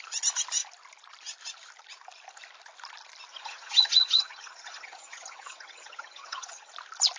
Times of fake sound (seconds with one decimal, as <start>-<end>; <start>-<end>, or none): 3.3-6.7